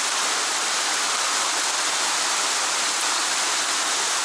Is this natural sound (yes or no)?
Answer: yes